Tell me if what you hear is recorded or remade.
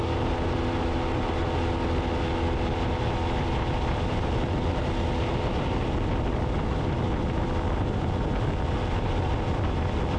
recorded